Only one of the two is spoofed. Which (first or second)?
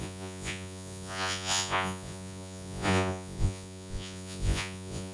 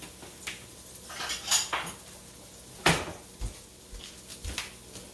first